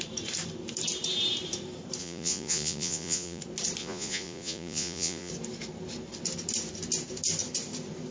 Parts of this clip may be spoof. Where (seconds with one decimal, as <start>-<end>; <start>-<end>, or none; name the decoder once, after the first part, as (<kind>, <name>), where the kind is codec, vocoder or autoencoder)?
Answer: 2.0-3.4 (vocoder, Vocos); 3.8-5.3